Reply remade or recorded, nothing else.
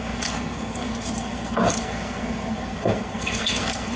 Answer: remade